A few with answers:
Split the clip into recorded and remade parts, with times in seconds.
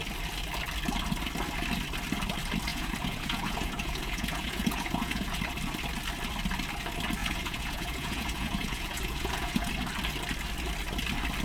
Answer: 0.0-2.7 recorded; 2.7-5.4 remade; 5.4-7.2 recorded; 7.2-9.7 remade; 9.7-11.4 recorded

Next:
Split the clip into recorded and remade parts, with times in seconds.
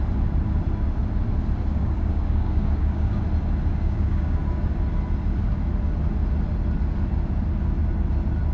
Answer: 0.0-1.7 recorded; 1.7-3.2 remade; 3.2-3.7 recorded; 3.7-4.4 remade; 4.4-8.5 recorded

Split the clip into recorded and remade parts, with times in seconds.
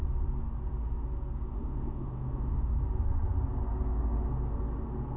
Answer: 0.0-1.5 recorded; 1.5-2.7 remade; 2.7-5.2 recorded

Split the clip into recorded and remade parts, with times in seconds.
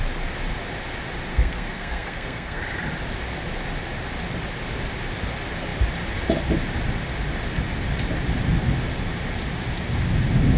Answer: 0.0-1.3 recorded; 1.3-2.6 remade; 2.6-10.6 recorded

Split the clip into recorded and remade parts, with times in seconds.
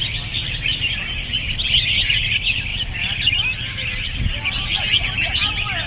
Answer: 0.0-5.9 recorded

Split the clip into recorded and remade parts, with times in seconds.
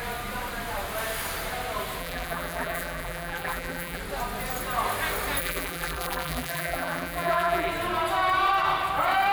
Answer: 0.0-2.0 recorded; 2.0-4.0 remade; 4.0-5.4 recorded; 5.4-7.7 remade; 7.7-9.3 recorded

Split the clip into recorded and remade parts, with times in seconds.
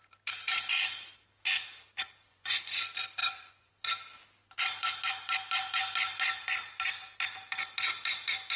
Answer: 0.0-2.3 recorded; 2.3-2.8 remade; 2.8-3.2 recorded; 3.2-3.7 remade; 3.7-8.6 recorded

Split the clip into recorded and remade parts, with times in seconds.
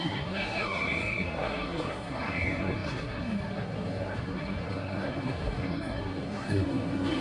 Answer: 0.0-7.2 remade